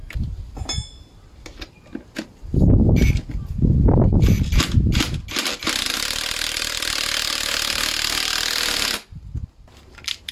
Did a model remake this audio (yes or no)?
no